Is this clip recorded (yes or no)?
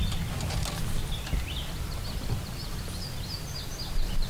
yes